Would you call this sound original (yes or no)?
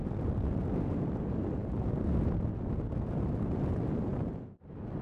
yes